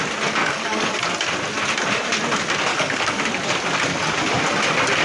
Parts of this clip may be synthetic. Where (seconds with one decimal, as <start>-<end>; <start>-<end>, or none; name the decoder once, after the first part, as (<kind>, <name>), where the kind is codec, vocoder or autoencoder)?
0.4-1.0 (codec, DAC); 2.7-3.2